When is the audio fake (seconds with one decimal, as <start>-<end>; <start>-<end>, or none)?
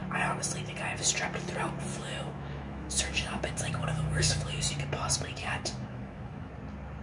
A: 1.9-4.6; 5.4-6.5